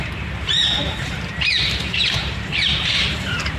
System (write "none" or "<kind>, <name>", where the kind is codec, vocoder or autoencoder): vocoder, BigVGAN v2